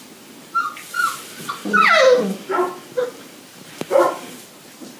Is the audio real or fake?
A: real